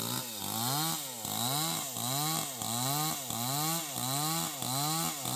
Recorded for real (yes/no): yes